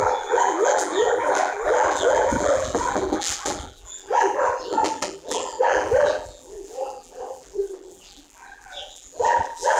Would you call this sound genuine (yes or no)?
no